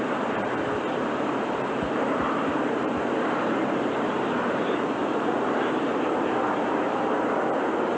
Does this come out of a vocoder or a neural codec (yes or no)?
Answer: yes